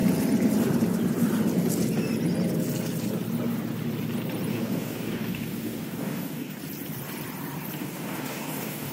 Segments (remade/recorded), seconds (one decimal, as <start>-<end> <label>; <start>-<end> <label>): 0.0-4.5 recorded; 4.5-6.6 remade; 6.6-7.8 recorded; 7.8-8.9 remade